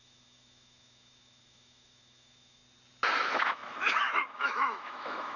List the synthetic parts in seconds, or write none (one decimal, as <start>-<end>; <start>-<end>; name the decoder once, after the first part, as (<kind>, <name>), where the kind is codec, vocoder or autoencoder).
0.0-2.6 (autoencoder, DAC-VAE); 3.2-5.4